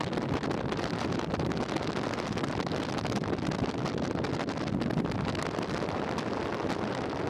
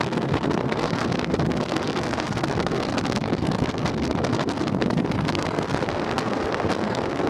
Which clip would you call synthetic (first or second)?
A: second